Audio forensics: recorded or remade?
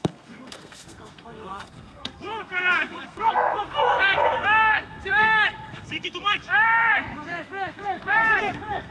remade